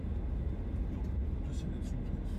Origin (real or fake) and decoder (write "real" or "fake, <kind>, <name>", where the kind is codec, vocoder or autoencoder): real